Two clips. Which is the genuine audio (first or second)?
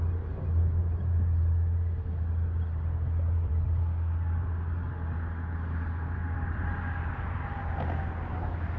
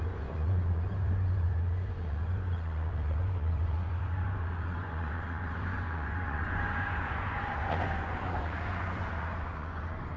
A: first